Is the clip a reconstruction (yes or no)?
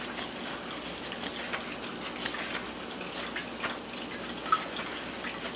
no